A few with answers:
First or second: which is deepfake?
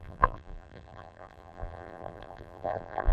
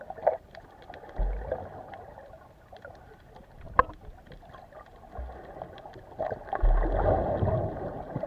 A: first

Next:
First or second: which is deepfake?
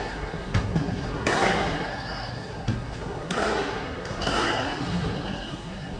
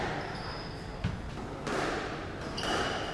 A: first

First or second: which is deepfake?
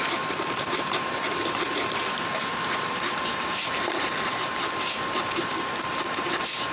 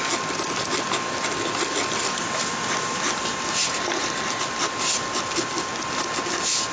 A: first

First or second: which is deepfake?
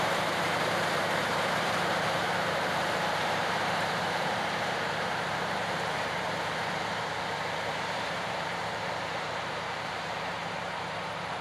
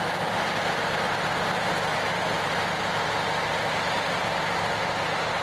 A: first